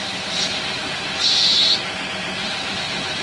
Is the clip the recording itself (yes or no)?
yes